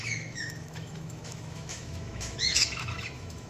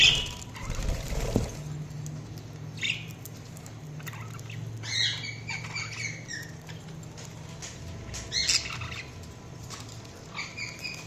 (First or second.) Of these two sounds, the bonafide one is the second